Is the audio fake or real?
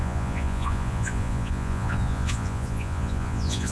fake